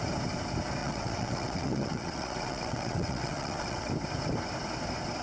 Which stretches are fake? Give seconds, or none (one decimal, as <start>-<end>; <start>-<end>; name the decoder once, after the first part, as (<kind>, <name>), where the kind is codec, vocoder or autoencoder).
0.8-3.9 (vocoder, WaveNeXt)